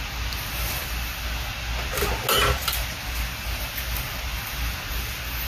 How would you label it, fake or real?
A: real